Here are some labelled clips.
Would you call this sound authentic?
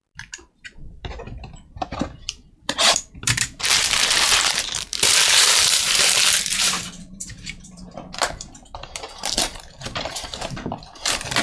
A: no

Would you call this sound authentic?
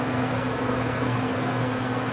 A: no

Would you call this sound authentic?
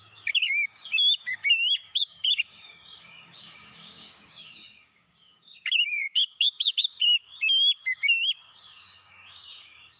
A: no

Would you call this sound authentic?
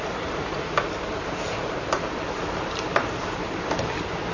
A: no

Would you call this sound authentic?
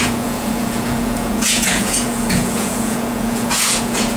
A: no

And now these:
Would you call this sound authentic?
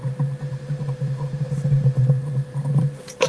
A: no